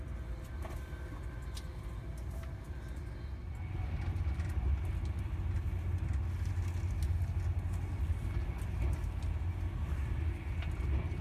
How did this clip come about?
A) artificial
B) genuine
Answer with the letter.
B